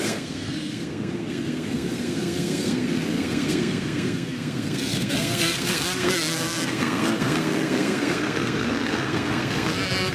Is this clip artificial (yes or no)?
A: yes